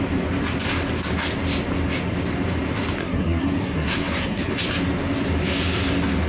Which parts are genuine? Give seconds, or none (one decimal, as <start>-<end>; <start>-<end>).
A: 0.0-3.0; 4.5-6.3